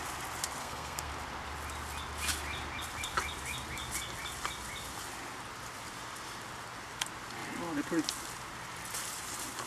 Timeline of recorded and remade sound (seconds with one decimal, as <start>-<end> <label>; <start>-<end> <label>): 0.0-0.6 recorded; 0.6-1.1 remade; 1.1-9.7 recorded